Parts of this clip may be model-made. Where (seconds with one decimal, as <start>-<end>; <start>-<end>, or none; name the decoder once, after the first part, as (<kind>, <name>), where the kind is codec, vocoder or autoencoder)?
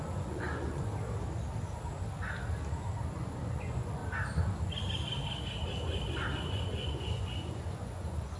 0.0-0.9 (vocoder, Vocos); 3.1-4.0; 6.5-8.4